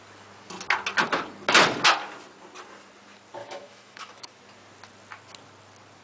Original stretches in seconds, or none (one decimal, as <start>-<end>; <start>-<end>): 0.0-3.4; 4.4-6.0